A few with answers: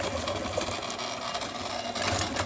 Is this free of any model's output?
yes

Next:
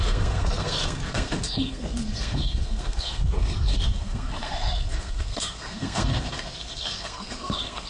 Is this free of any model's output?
no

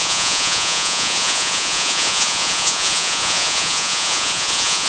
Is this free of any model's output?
no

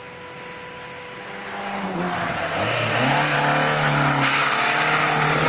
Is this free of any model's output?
yes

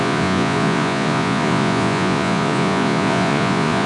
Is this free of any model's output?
no